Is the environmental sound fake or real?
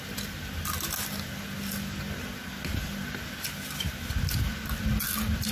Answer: real